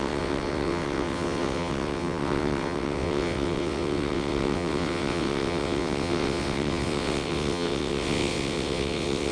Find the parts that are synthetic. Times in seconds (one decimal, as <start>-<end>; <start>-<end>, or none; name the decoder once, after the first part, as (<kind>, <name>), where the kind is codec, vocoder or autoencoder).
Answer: 0.0-9.3 (vocoder, WaveNeXt)